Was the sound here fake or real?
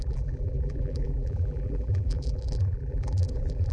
fake